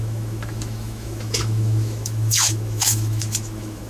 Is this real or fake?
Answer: fake